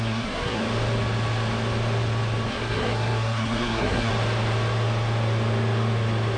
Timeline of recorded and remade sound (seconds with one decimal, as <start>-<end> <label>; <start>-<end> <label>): 0.0-0.6 remade; 0.6-2.5 recorded; 2.5-4.1 remade; 4.1-6.4 recorded